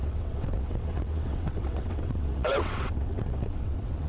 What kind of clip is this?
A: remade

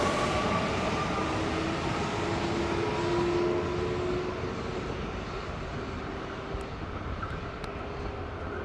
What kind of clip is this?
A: recorded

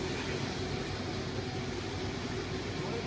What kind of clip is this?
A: recorded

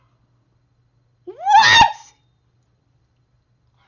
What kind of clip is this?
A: recorded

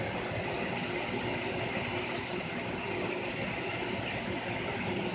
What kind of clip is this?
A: recorded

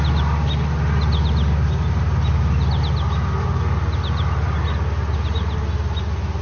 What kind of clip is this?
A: recorded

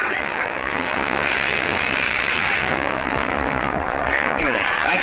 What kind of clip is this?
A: remade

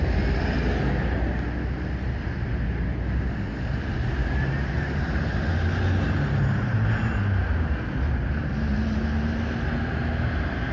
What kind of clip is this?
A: recorded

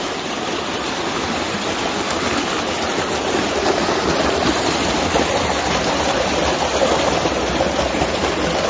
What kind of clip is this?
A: recorded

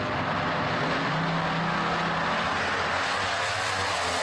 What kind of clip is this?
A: recorded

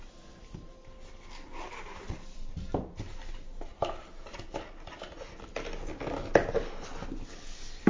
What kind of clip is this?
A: recorded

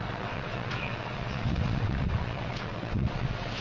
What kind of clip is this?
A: remade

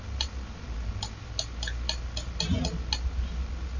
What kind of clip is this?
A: recorded